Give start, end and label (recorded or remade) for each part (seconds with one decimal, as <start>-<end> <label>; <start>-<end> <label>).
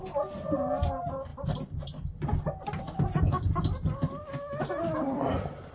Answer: 0.0-5.7 recorded